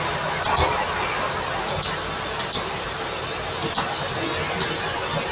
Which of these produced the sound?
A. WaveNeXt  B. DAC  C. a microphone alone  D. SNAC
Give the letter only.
C